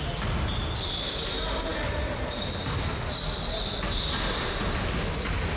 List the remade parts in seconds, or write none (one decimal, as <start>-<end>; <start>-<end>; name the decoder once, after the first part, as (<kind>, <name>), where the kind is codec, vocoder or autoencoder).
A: none